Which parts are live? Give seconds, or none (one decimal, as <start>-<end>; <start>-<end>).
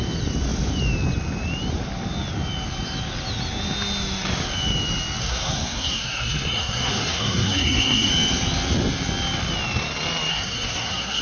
0.0-5.2; 8.1-10.3